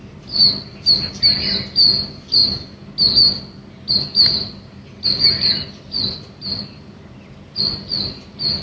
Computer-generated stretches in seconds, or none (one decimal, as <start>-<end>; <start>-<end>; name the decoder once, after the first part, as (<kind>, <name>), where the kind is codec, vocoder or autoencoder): none